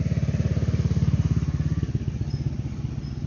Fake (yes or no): no